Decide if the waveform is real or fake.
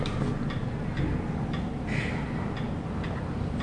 real